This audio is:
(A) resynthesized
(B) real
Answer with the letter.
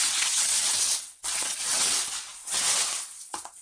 A